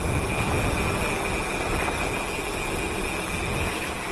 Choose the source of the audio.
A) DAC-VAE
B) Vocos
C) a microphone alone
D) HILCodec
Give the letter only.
C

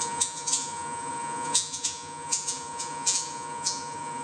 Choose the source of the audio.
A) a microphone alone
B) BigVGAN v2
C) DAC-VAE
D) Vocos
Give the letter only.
D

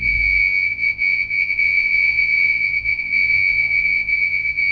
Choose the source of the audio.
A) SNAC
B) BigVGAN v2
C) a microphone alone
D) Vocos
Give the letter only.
D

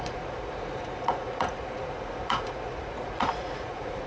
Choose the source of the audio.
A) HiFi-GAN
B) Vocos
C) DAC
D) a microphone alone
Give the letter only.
B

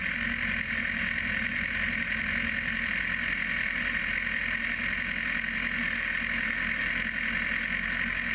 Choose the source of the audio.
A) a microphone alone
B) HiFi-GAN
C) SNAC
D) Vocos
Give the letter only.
A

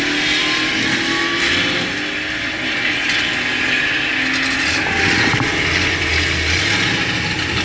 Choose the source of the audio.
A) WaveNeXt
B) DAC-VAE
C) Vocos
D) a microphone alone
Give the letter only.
D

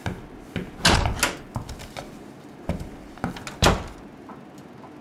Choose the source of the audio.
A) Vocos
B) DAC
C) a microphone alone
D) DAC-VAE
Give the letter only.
C